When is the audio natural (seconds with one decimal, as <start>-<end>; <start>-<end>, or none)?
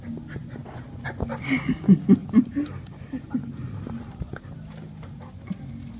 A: 0.0-2.2; 4.4-6.0